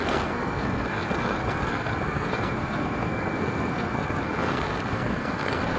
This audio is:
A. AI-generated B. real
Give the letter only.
A